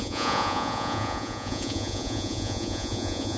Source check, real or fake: fake